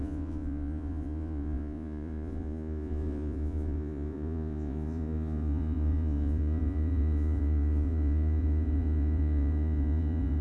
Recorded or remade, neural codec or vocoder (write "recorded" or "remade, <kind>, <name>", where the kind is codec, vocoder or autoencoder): remade, vocoder, Vocos